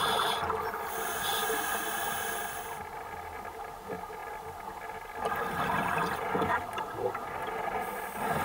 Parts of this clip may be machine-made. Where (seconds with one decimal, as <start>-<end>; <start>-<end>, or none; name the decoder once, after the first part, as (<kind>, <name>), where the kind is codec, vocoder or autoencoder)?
none